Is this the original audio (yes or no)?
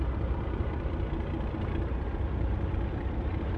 yes